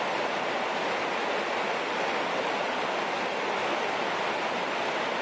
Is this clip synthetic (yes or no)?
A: no